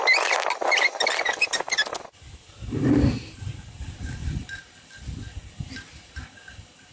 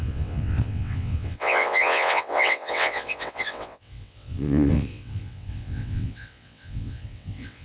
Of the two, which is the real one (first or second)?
first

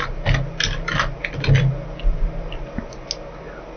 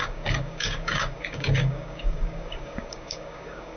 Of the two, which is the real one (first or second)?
first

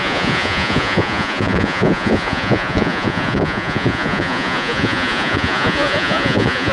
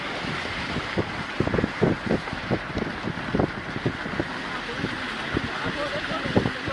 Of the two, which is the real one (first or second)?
second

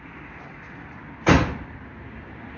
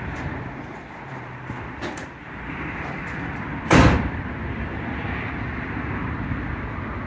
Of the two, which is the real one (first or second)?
first